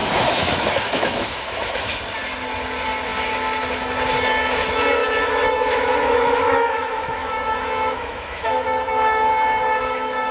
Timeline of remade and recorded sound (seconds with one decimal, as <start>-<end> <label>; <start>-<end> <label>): 0.0-2.0 remade; 2.0-5.0 recorded; 5.0-10.3 remade

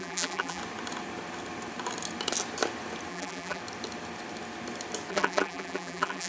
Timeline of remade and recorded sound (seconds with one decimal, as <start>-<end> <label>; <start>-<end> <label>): 0.0-0.6 remade; 0.6-3.1 recorded; 3.1-3.6 remade; 3.6-5.1 recorded; 5.1-6.3 remade

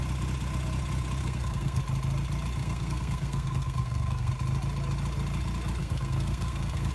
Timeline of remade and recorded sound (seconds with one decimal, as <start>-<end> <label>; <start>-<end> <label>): 0.0-1.2 recorded; 1.2-1.8 remade; 1.8-2.6 recorded; 2.6-4.3 remade; 4.3-5.8 recorded; 5.8-6.9 remade

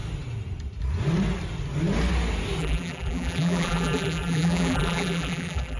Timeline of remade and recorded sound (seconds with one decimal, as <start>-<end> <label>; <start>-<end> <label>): 0.0-2.6 recorded; 2.6-5.8 remade

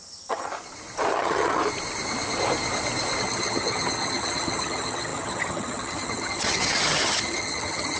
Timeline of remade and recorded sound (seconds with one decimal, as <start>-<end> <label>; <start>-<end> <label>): 0.0-0.5 remade; 0.5-1.1 recorded; 1.1-1.6 remade; 1.6-3.2 recorded; 3.2-8.0 remade

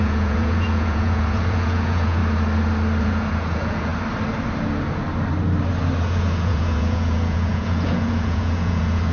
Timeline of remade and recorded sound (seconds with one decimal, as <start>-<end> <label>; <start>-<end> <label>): 0.0-2.2 remade; 2.2-3.0 recorded; 3.0-3.9 remade; 3.9-6.0 recorded; 6.0-9.1 remade

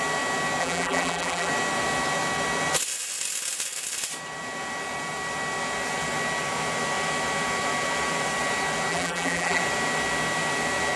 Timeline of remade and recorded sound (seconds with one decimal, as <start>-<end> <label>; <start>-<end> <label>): 0.0-0.6 recorded; 0.6-1.5 remade; 1.5-8.9 recorded; 8.9-9.6 remade; 9.6-11.0 recorded

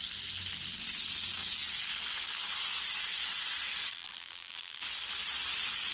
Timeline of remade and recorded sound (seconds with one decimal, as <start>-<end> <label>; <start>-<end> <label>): 0.0-3.9 recorded; 3.9-4.8 remade; 4.8-5.9 recorded